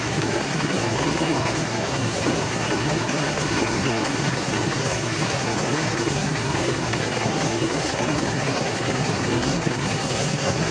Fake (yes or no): yes